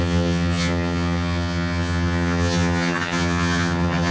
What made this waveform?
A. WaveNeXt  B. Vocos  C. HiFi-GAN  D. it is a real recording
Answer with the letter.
C